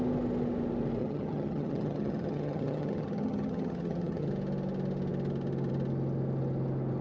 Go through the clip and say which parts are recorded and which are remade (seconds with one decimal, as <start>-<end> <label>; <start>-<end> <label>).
0.0-1.0 recorded; 1.0-4.3 remade; 4.3-7.0 recorded